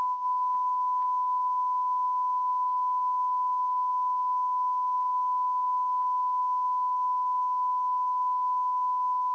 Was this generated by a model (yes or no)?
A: no